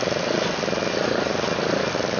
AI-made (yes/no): no